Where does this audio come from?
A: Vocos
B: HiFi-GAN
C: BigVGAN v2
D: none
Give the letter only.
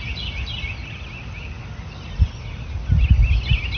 D